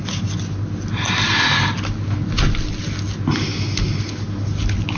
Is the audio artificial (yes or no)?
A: no